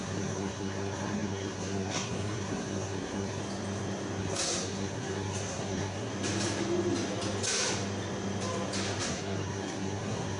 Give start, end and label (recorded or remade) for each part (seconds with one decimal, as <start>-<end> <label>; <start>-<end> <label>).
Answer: 0.0-3.4 remade; 3.4-4.2 recorded; 4.2-6.1 remade; 6.1-9.0 recorded; 9.0-10.4 remade